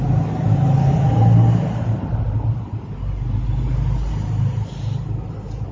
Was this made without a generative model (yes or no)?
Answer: yes